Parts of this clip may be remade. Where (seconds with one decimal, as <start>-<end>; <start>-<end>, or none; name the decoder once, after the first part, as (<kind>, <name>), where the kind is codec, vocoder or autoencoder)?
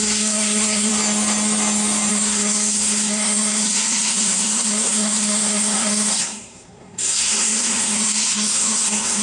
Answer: 0.0-0.9 (codec, SNAC); 2.1-9.2